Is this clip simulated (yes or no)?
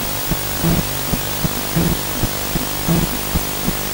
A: no